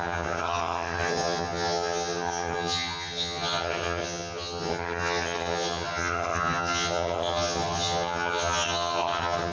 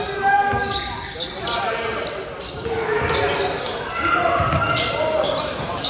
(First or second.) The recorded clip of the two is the second